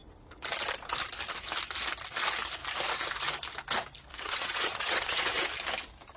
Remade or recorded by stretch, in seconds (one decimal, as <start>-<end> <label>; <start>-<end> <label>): 0.0-4.1 recorded; 4.1-5.5 remade; 5.5-6.2 recorded